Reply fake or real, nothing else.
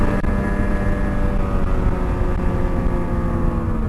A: real